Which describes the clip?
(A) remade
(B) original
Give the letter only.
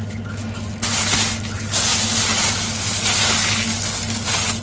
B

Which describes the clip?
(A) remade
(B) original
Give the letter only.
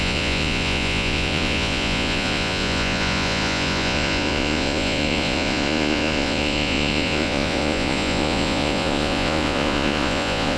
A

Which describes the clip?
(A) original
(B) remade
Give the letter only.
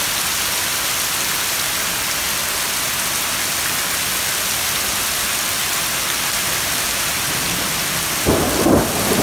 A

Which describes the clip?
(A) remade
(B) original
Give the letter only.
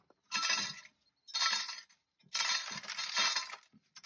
B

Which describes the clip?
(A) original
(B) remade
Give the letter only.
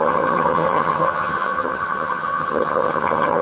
B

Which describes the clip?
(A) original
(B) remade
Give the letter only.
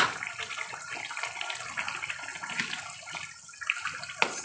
A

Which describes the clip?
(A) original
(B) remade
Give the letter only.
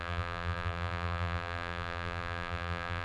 B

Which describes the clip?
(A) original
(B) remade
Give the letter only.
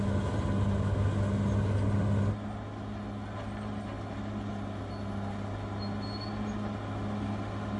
A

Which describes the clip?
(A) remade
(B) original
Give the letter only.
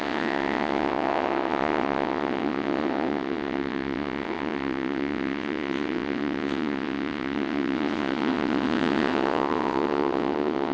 A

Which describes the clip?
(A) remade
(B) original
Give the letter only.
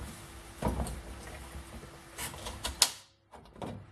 B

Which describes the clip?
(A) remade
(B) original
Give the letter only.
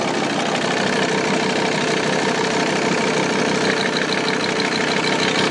B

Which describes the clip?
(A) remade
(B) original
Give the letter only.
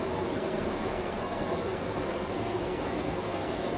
A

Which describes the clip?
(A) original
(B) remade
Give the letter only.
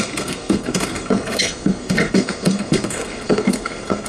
B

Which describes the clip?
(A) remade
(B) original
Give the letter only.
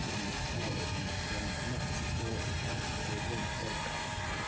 B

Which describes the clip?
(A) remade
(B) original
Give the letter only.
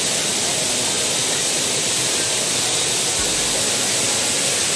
B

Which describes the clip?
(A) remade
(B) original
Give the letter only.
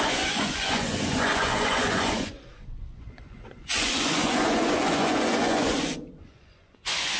A